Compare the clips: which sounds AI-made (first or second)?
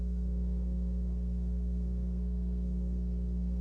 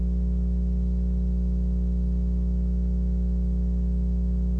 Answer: first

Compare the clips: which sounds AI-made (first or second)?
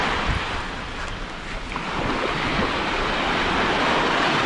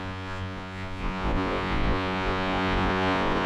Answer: second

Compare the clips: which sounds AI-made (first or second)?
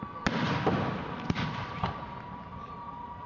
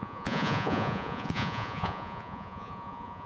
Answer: second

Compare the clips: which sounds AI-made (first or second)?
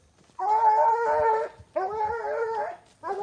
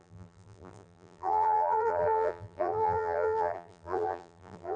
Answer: second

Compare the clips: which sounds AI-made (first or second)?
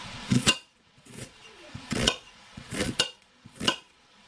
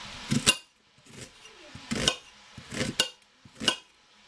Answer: first